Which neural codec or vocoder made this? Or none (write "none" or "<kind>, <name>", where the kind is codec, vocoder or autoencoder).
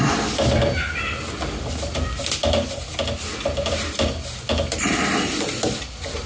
none